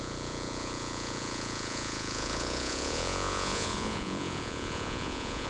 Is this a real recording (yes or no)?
no